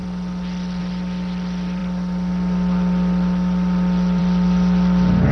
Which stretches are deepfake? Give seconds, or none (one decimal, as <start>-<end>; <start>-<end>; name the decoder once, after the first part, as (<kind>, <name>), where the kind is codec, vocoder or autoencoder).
none